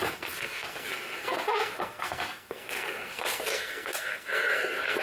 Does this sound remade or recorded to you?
remade